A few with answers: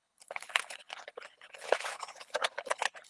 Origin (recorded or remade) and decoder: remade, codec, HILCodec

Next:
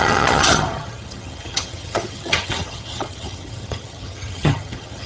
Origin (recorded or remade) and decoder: remade, vocoder, HiFi-GAN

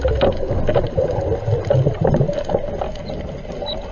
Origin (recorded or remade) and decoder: recorded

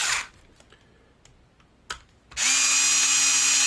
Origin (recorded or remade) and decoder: recorded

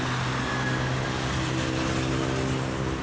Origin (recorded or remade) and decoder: recorded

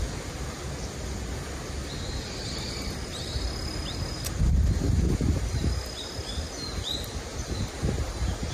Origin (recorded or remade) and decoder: recorded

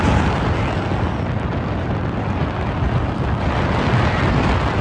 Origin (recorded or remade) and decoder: recorded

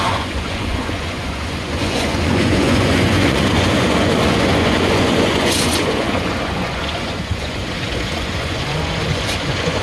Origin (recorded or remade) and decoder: remade, vocoder, Vocos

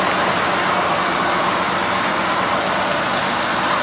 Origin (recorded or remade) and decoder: recorded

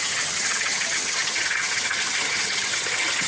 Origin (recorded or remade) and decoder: remade, vocoder, HiFi-GAN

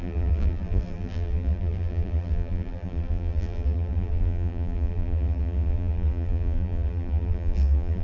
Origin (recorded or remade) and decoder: remade, vocoder, BigVGAN v2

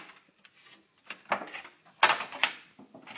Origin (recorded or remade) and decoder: recorded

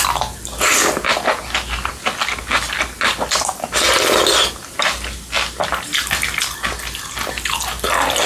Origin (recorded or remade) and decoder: recorded